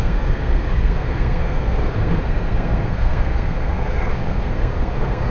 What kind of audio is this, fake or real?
fake